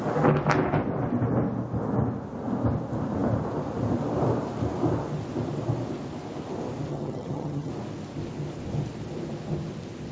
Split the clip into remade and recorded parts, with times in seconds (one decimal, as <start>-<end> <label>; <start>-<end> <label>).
0.0-6.9 recorded; 6.9-7.7 remade; 7.7-10.1 recorded